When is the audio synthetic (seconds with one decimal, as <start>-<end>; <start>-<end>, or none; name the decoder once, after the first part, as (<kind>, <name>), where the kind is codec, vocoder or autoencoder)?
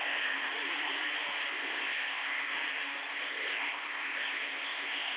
0.0-0.5 (codec, ZipCodec); 1.5-2.5; 3.1-5.2